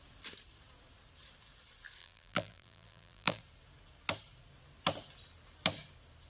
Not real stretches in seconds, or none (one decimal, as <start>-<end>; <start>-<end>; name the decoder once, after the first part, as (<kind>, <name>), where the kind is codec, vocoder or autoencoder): 2.0-3.4 (vocoder, BigVGAN v2)